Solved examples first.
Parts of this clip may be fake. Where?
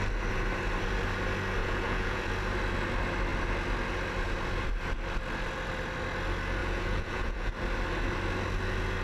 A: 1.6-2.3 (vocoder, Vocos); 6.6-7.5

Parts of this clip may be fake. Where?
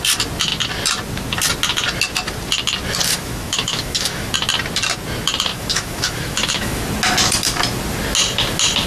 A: 3.1-4.3 (autoencoder, DAC-VAE); 5.5-6.8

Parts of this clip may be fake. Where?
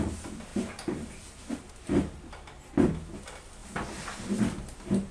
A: 0.5-1.7 (vocoder, BigVGAN v2)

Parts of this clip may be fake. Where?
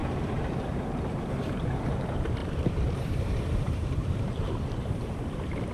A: 0.0-5.7 (vocoder, BigVGAN v2)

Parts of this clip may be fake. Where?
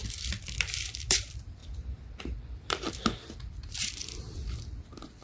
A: 0.0-1.6 (vocoder, BigVGAN v2); 2.2-5.2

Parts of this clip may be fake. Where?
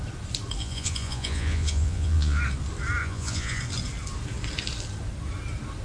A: 0.6-2.4 (vocoder, Vocos); 3.0-3.6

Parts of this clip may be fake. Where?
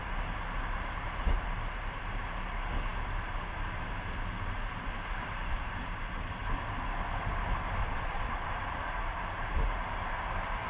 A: 7.8-8.5 (vocoder, Vocos)